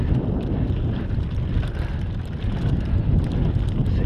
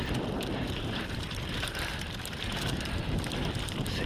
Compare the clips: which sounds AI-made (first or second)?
second